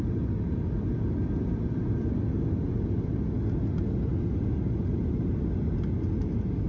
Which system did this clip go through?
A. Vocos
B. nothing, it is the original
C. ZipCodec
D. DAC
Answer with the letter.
B